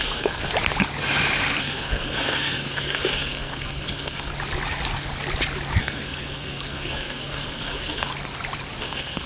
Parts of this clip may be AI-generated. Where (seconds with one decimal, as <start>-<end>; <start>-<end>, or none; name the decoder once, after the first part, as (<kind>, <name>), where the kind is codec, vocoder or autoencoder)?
0.0-0.5 (codec, SNAC); 1.6-4.3; 5.8-8.1; 8.8-9.3